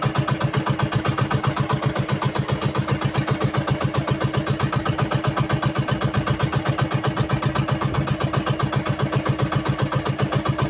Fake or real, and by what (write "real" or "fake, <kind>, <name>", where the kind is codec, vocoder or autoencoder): real